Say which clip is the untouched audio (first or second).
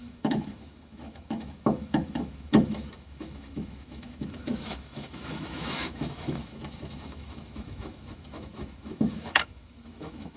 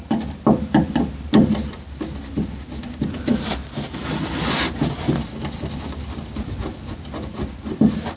second